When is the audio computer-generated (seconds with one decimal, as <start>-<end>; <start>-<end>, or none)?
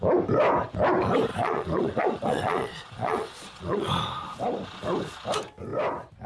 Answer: 1.3-3.9